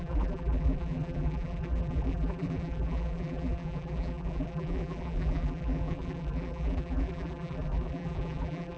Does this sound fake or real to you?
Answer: fake